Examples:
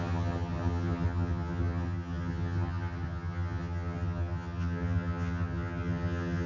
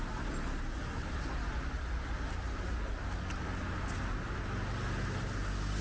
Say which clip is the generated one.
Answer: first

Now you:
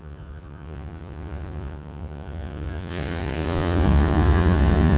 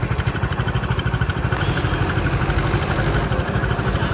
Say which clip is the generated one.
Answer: first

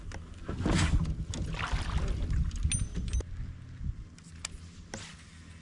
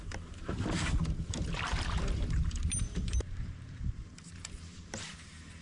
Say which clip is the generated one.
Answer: second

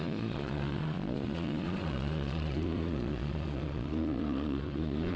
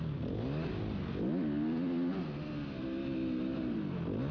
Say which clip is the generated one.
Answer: first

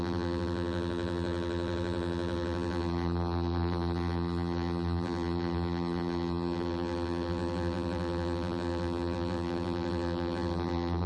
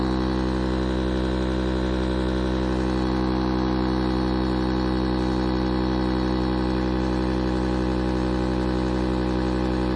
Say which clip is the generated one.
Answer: first